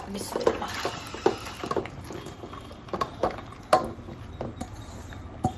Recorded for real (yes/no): yes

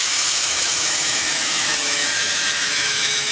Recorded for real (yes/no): no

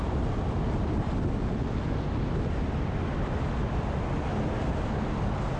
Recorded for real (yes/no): yes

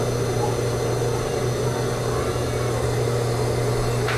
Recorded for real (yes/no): yes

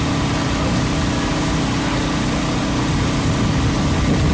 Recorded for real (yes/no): yes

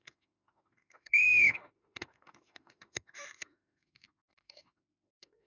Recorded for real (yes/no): no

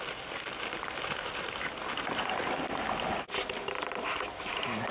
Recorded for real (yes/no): yes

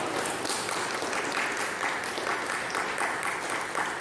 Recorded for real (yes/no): yes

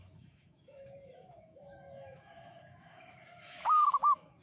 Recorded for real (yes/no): no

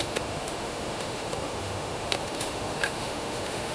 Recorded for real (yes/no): no